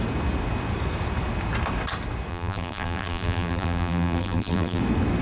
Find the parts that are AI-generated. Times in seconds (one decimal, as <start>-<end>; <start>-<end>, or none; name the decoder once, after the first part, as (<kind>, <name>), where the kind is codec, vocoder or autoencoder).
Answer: 2.3-4.8 (vocoder, BigVGAN v2)